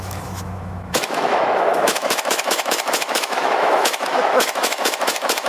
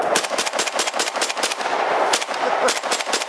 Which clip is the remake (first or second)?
first